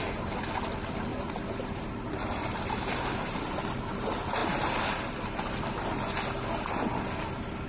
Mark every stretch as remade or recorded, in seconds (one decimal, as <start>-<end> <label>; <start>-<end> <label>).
0.0-1.1 recorded; 1.1-3.6 remade; 3.6-7.7 recorded